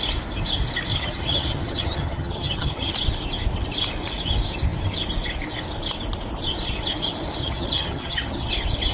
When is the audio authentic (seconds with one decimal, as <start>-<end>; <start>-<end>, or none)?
0.0-0.9; 2.9-7.4; 8.5-8.9